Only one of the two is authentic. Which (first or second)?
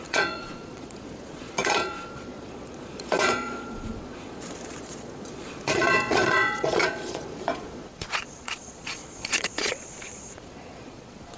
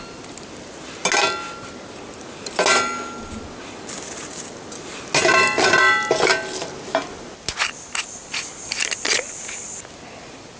second